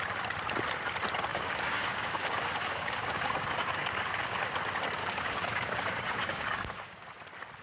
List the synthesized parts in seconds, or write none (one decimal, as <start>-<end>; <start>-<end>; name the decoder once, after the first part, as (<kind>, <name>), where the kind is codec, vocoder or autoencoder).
1.3-4.4 (codec, DAC); 5.0-7.1